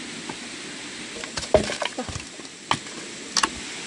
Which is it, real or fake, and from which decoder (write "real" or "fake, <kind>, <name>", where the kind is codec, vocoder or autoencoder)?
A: real